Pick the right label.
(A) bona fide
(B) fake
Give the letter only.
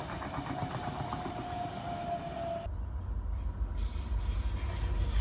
A